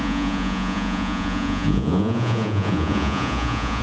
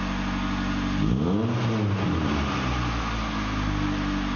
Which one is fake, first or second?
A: first